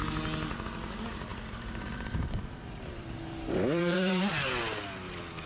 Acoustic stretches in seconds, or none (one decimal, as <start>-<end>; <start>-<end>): 0.0-1.3; 4.6-5.5